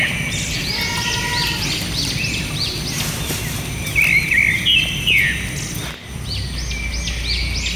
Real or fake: real